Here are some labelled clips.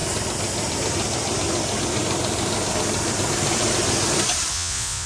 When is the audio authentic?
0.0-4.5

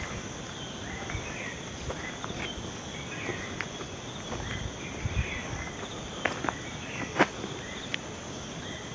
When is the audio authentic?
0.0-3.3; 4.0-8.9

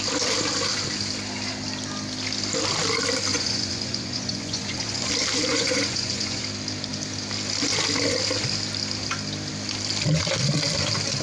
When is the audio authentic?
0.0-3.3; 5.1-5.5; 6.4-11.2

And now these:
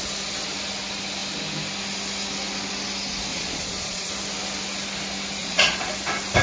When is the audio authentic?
0.0-3.3; 4.1-5.4; 5.9-6.4

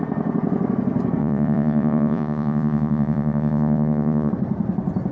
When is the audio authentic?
0.0-1.2; 4.3-5.1

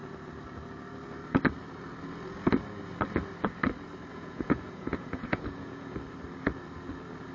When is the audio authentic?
0.0-4.1; 6.0-7.3